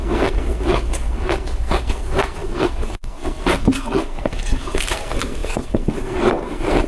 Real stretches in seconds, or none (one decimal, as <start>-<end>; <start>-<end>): none